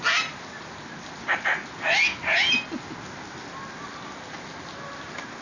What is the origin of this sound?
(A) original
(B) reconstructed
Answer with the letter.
A